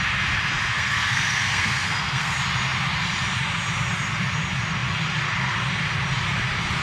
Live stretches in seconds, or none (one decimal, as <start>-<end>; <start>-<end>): 0.0-0.7; 2.3-6.8